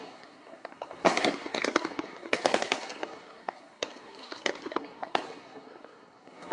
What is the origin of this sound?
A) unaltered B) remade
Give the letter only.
B